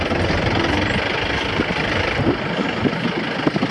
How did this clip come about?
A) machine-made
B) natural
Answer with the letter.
B